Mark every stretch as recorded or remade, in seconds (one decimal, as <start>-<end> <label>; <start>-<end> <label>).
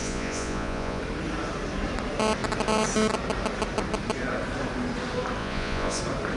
0.0-1.0 remade; 1.0-5.4 recorded; 5.4-6.0 remade; 6.0-6.4 recorded